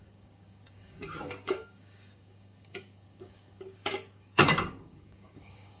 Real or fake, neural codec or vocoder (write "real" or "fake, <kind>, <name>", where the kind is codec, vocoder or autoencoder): fake, codec, DAC